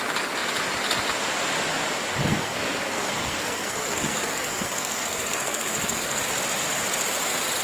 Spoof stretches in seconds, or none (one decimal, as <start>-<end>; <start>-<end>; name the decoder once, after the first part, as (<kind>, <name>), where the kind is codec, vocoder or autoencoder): 2.2-6.2 (codec, SNAC)